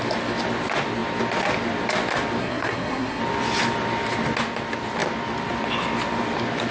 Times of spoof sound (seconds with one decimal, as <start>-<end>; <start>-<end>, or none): 2.4-3.2

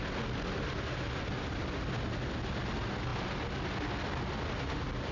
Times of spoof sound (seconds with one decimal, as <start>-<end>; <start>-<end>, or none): none

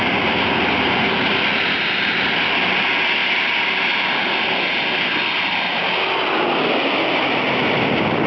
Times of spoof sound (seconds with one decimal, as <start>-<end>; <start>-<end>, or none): none